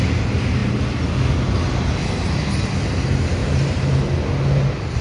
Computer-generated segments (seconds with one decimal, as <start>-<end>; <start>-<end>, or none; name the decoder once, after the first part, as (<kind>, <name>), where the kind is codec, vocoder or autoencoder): 3.4-4.0 (vocoder, BigVGAN v2)